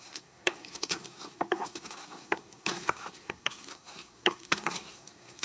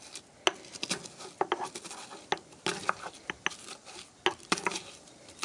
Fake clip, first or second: first